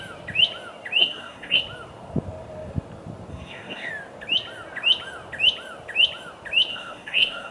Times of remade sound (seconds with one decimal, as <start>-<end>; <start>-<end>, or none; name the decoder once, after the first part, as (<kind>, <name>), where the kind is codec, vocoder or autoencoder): 1.0-1.6 (codec, SNAC); 3.3-3.9; 6.7-7.5